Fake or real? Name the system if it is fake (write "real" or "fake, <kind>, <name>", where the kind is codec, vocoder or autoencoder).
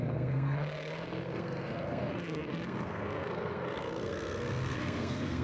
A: fake, codec, SNAC